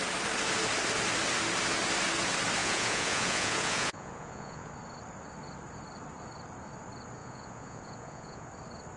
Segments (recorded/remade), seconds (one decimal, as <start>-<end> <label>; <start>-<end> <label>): 0.0-2.6 recorded; 2.6-4.7 remade; 4.7-7.2 recorded; 7.2-8.5 remade; 8.5-9.0 recorded